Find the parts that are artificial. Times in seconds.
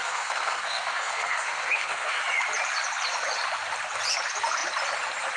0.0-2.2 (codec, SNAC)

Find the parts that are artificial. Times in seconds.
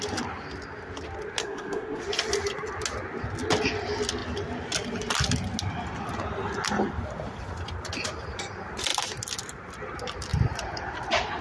1.4-2.0 (codec, SNAC)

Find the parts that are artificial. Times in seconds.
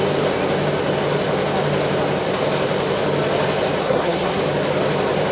3.8-4.4 (codec, SNAC)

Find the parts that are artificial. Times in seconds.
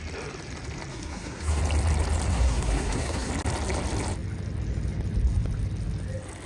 0.9-1.6 (codec, SNAC); 2.3-3.3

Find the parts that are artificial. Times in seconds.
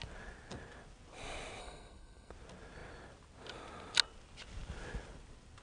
1.6-2.3 (codec, SNAC)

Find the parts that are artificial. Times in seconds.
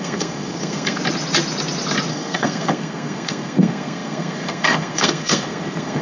0.0-1.0 (codec, SNAC); 2.1-6.0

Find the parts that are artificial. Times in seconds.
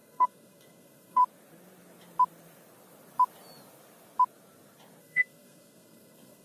0.0-1.2 (codec, SNAC); 5.0-6.4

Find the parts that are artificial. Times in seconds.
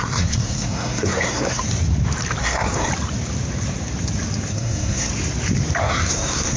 0.0-1.6 (codec, SNAC); 2.4-2.9; 4.5-5.1; 5.8-6.6